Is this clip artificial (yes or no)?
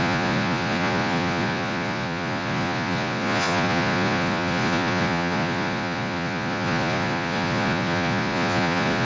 yes